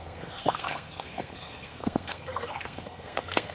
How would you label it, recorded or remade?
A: remade